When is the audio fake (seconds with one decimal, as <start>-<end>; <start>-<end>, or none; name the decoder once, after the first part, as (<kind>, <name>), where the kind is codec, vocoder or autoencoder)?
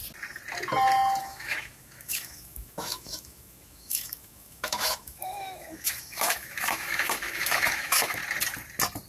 1.2-8.2 (autoencoder, DAC-VAE)